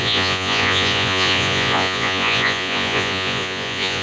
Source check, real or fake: fake